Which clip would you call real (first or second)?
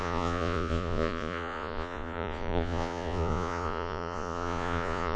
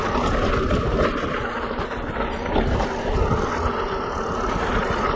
second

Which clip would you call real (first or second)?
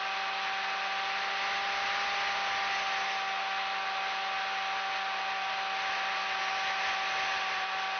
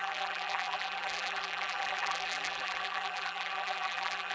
first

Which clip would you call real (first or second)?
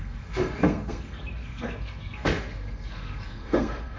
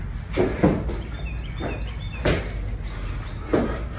second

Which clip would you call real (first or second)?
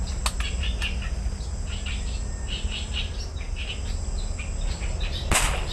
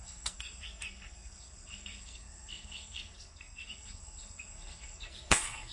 first